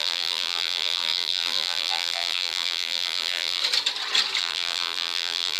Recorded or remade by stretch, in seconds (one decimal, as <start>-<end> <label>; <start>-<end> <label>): 0.0-3.6 remade; 3.6-4.4 recorded; 4.4-5.6 remade